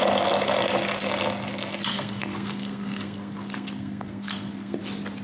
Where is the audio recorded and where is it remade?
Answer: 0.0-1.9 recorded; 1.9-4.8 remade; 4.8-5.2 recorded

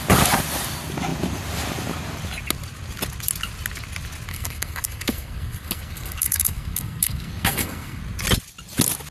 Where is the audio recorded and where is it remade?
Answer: 0.0-4.3 recorded; 4.3-8.0 remade; 8.0-9.1 recorded